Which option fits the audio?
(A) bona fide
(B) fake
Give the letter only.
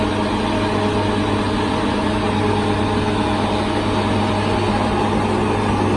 A